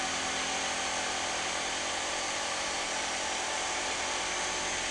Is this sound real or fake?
fake